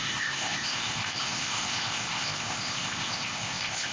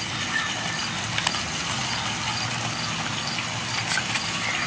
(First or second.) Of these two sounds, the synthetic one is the first